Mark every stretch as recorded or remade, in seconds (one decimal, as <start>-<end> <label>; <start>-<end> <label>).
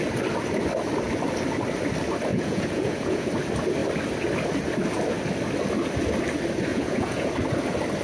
0.0-2.3 recorded; 2.3-3.3 remade; 3.3-6.7 recorded; 6.7-7.3 remade; 7.3-8.0 recorded